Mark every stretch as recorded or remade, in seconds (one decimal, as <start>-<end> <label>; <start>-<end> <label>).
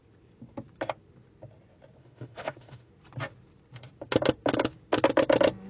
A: 0.0-2.0 recorded; 2.0-2.9 remade; 2.9-5.7 recorded